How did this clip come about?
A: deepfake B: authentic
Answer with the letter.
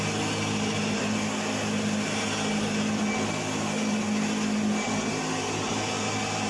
B